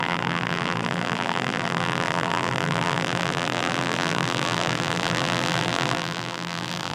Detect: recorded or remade remade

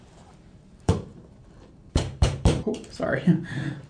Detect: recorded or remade remade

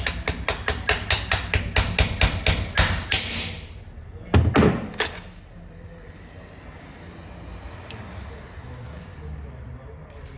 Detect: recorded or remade recorded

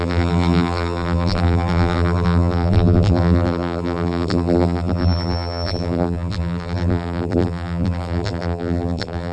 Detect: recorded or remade remade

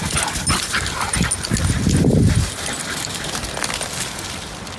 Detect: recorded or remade remade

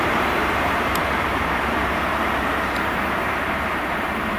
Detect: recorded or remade remade